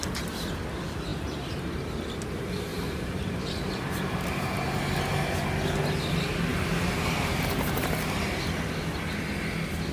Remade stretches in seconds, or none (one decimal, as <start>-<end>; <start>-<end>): 2.7-4.8; 6.5-8.3